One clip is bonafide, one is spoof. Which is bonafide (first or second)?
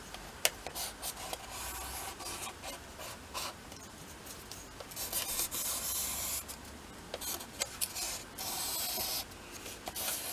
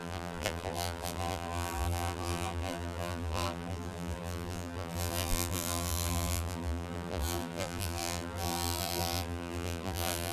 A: first